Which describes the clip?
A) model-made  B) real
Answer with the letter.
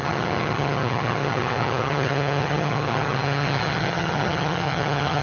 A